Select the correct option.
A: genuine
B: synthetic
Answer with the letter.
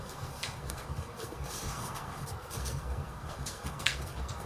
B